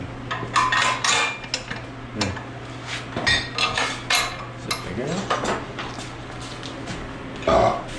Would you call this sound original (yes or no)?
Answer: yes